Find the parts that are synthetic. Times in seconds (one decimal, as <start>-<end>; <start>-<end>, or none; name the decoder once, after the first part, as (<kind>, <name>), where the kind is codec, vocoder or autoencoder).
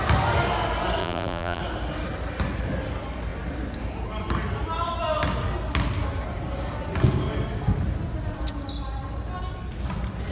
1.0-1.6 (vocoder, BigVGAN v2)